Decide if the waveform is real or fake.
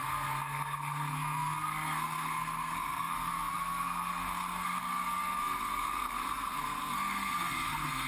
fake